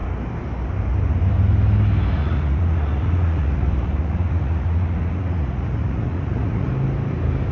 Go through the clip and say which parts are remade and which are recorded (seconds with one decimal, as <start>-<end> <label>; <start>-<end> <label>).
0.0-2.2 recorded; 2.2-6.7 remade; 6.7-7.5 recorded